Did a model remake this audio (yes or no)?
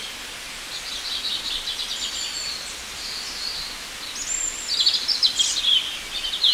no